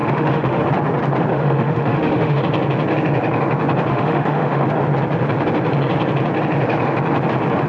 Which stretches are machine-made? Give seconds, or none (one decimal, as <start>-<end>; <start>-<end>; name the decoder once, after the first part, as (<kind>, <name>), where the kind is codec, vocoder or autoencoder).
0.0-0.6 (autoencoder, DAC-VAE); 1.3-2.4; 3.9-4.7